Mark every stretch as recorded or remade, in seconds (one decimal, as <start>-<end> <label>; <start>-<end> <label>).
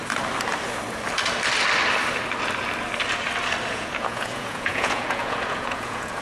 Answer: 0.0-3.7 recorded; 3.7-6.2 remade